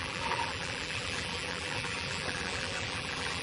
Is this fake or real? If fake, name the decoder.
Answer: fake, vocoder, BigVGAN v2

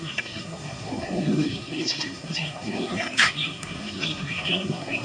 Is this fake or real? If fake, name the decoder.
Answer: fake, codec, SNAC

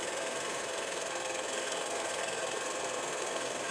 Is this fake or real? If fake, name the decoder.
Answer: fake, codec, SNAC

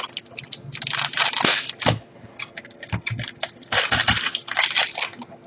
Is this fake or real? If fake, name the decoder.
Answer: real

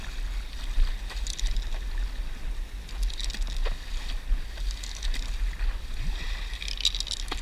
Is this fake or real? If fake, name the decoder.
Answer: real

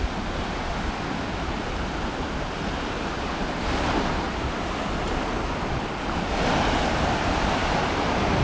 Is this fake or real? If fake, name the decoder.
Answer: real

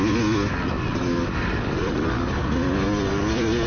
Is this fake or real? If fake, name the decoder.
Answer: real